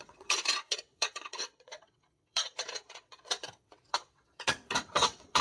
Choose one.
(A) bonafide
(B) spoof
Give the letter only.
B